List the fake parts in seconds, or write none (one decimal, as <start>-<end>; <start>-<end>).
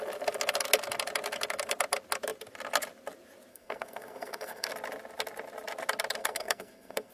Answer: 3.5-4.7; 6.2-7.1